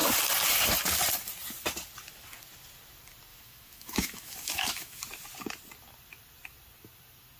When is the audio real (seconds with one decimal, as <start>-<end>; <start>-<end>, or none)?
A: 0.0-3.3; 5.0-7.4